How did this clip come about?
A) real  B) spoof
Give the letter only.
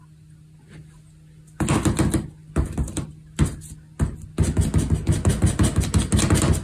A